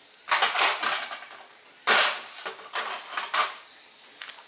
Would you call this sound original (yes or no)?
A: yes